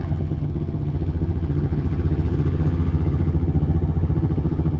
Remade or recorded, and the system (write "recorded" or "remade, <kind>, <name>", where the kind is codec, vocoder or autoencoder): remade, vocoder, HiFi-GAN